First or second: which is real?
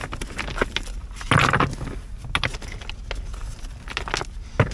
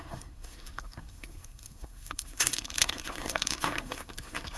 first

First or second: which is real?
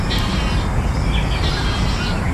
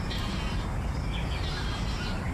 first